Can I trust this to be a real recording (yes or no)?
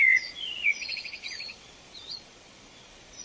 no